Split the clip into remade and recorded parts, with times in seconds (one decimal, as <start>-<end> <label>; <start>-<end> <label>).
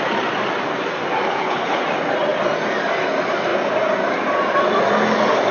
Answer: 0.0-1.3 recorded; 1.3-1.8 remade; 1.8-5.5 recorded